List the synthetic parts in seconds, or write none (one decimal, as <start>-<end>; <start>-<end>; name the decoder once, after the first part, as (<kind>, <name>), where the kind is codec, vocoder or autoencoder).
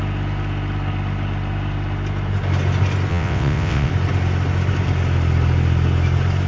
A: 3.1-3.9 (vocoder, WaveNeXt)